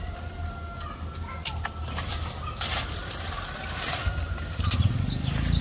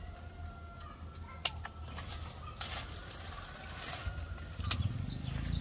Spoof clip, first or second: first